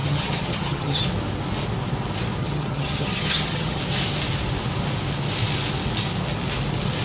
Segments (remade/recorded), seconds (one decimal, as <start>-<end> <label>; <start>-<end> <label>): 0.0-1.0 remade; 1.0-2.4 recorded; 2.4-3.8 remade; 3.8-7.0 recorded